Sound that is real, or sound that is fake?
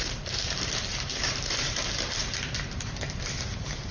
fake